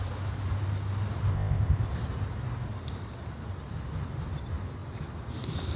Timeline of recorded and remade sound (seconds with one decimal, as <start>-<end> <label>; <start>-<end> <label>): 0.0-1.3 recorded; 1.3-1.9 remade; 1.9-5.8 recorded